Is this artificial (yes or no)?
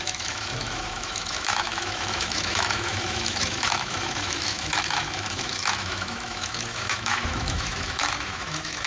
yes